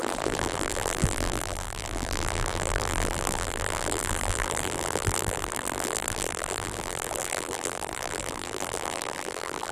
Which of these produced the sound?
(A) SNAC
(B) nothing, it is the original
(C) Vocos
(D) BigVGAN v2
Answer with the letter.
D